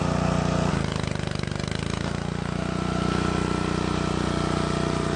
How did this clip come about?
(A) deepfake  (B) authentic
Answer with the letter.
B